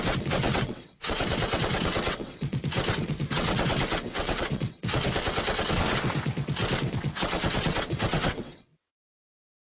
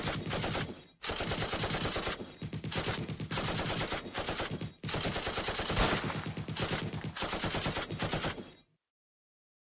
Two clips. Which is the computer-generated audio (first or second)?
first